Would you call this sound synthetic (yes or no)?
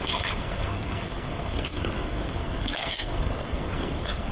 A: yes